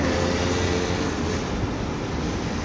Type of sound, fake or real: real